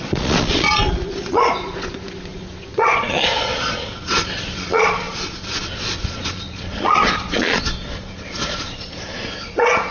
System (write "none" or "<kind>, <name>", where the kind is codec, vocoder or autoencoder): vocoder, Vocos